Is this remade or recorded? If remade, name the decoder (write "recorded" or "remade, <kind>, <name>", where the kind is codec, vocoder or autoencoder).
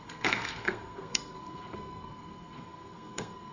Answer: remade, codec, SNAC